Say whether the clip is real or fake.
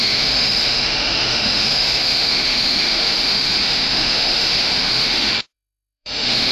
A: fake